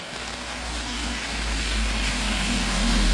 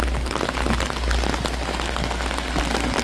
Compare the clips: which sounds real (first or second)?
second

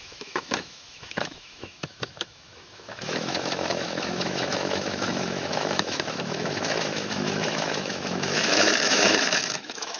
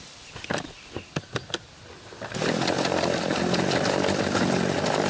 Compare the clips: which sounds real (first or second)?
second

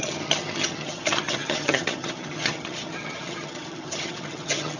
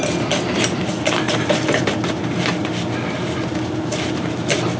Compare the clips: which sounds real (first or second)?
second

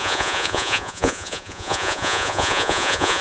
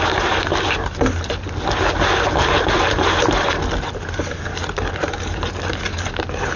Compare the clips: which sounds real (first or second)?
second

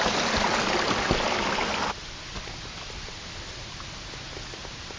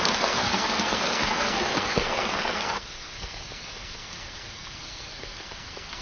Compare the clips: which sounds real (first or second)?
first